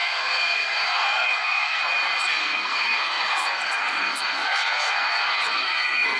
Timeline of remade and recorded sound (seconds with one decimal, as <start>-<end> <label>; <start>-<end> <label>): 0.0-1.8 remade; 1.8-2.4 recorded; 2.4-6.2 remade